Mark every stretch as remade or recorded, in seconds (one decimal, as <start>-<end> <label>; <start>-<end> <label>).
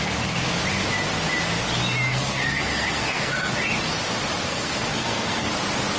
0.0-2.1 recorded; 2.1-3.5 remade; 3.5-4.5 recorded; 4.5-5.5 remade; 5.5-6.0 recorded